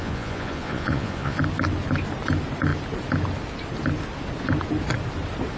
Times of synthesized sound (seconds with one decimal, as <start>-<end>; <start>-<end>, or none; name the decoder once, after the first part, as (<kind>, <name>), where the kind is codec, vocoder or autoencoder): 0.0-1.4 (vocoder, Vocos)